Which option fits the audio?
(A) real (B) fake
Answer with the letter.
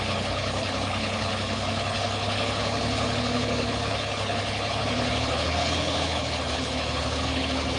B